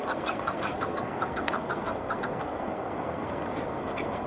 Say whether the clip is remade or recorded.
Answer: remade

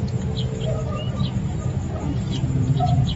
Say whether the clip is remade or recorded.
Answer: recorded